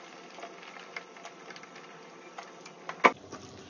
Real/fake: real